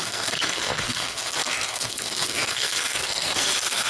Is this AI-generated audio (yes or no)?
yes